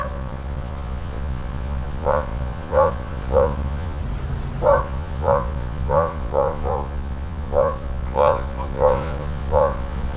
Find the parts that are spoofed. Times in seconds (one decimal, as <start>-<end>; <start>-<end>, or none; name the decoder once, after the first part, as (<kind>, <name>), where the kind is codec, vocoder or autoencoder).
0.0-4.0 (vocoder, Vocos); 4.8-10.2